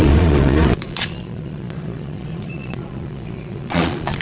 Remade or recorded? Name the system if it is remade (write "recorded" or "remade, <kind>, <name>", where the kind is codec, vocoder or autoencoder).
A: remade, vocoder, Vocos